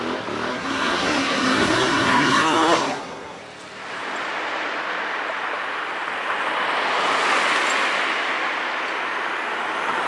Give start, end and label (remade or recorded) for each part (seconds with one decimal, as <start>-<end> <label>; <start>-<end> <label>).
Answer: 0.0-0.5 recorded; 0.5-3.4 remade; 3.4-10.1 recorded